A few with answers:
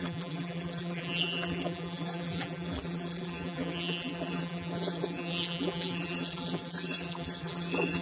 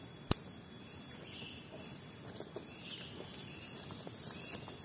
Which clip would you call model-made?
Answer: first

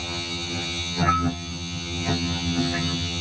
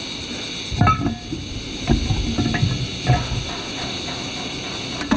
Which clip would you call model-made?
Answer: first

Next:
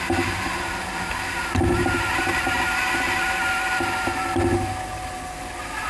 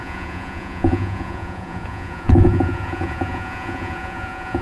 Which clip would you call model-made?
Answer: second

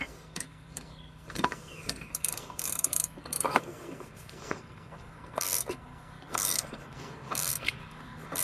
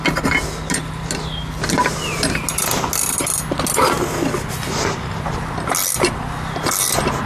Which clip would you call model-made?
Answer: first